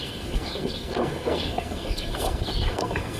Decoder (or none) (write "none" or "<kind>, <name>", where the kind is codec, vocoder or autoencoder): codec, SNAC